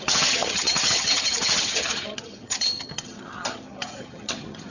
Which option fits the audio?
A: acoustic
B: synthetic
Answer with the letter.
B